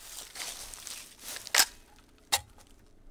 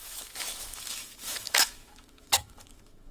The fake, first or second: second